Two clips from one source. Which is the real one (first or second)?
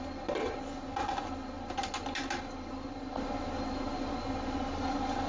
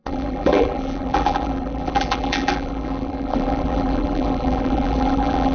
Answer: first